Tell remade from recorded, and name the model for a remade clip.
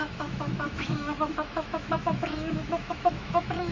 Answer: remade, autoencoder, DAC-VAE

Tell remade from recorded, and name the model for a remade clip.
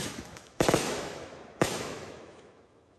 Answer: remade, autoencoder, DAC-VAE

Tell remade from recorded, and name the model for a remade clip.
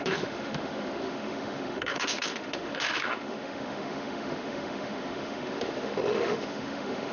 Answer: remade, autoencoder, DAC-VAE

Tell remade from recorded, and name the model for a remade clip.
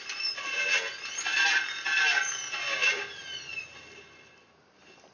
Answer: recorded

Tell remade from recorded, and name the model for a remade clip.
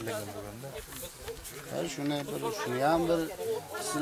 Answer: recorded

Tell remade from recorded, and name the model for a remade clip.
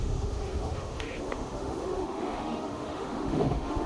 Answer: remade, autoencoder, DAC-VAE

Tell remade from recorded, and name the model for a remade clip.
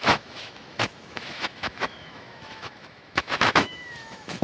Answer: remade, autoencoder, DAC-VAE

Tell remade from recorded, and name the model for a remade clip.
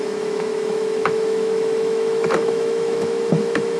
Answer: remade, autoencoder, DAC-VAE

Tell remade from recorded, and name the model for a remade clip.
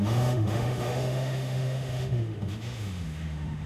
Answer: remade, autoencoder, DAC-VAE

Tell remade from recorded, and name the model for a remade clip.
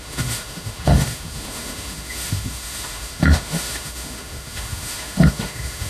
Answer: remade, autoencoder, DAC-VAE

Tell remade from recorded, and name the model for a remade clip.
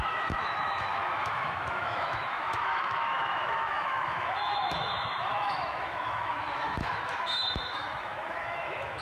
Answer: remade, autoencoder, DAC-VAE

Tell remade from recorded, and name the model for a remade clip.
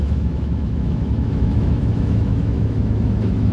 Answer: remade, autoencoder, DAC-VAE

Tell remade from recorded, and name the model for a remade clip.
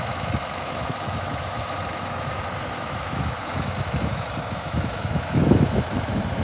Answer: remade, autoencoder, DAC-VAE